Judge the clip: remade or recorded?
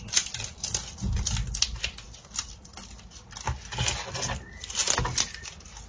recorded